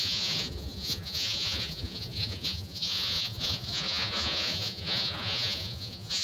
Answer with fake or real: fake